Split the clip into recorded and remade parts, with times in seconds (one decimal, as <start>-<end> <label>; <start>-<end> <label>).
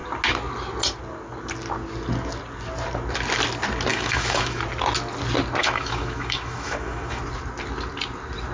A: 0.0-3.9 recorded; 3.9-4.6 remade; 4.6-5.6 recorded; 5.6-7.2 remade; 7.2-8.5 recorded